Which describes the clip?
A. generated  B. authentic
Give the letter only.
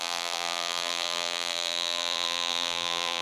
A